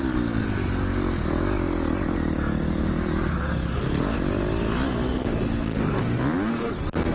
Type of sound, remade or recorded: recorded